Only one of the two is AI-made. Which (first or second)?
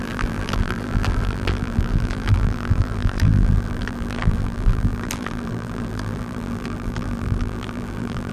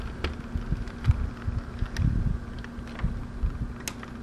first